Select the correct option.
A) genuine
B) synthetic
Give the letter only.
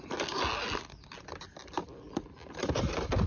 A